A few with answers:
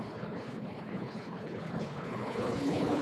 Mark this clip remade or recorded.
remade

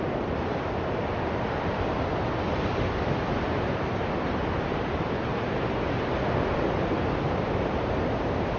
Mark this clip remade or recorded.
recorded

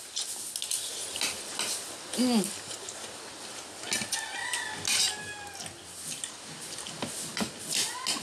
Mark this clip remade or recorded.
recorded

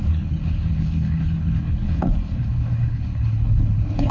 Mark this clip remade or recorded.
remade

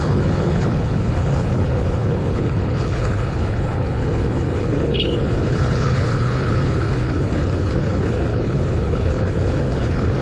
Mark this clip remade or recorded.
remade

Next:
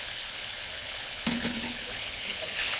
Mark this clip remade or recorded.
remade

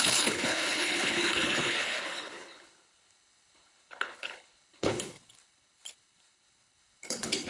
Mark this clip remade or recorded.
remade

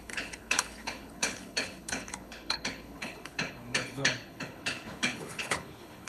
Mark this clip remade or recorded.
remade